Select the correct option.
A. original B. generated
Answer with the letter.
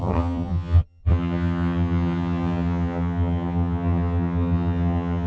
B